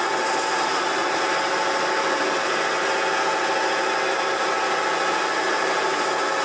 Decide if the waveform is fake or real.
real